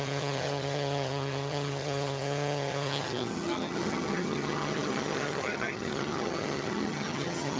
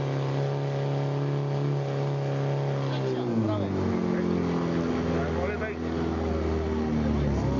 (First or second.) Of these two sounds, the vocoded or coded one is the first